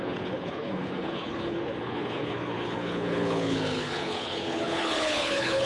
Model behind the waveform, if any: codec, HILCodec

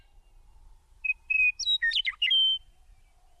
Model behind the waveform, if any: none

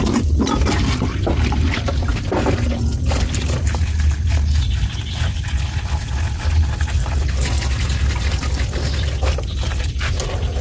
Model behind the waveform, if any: none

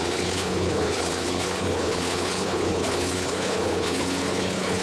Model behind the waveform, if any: codec, HILCodec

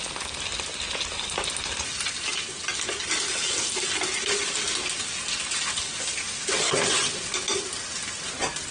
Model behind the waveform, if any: none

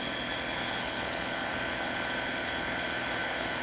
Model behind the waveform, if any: codec, HILCodec